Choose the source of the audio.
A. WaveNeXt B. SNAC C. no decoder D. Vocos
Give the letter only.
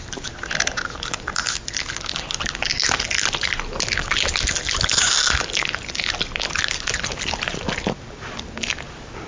C